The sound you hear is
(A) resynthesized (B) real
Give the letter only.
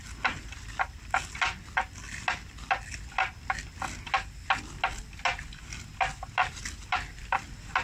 B